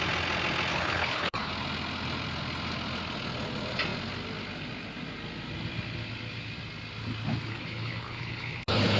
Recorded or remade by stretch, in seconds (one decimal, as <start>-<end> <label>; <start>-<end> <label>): 0.0-0.7 recorded; 0.7-1.5 remade; 1.5-7.5 recorded; 7.5-9.0 remade